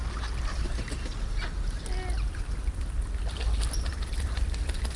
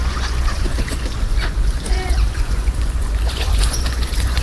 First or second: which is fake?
second